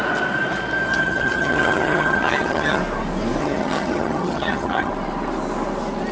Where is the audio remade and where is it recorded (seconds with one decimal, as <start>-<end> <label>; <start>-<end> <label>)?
0.0-0.9 recorded; 0.9-2.8 remade; 2.8-3.4 recorded; 3.4-4.9 remade; 4.9-6.1 recorded